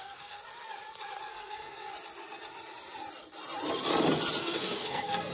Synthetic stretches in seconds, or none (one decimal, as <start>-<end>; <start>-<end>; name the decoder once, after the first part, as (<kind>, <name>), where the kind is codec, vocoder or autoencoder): 0.0-0.4 (codec, SNAC); 1.3-1.9; 4.4-5.3